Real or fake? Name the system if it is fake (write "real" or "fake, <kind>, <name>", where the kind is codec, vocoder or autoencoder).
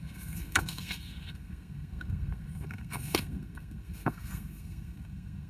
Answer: fake, codec, SNAC